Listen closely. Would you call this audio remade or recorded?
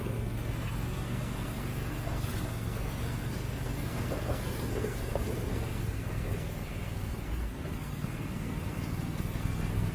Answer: remade